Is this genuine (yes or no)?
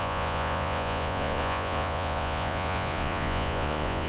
no